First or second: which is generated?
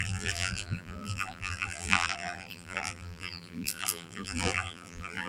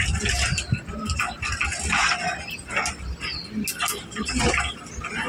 first